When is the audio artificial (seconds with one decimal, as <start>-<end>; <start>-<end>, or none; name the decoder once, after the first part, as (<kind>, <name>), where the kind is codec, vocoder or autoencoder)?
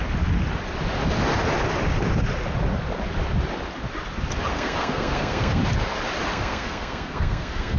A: 4.5-5.6 (codec, SNAC); 6.3-7.8